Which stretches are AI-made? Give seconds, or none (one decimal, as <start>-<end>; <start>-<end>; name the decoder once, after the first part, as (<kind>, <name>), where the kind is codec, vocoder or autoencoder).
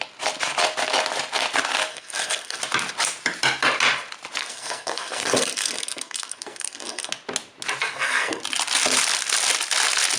1.9-2.6 (codec, SNAC); 4.4-7.1; 7.8-8.4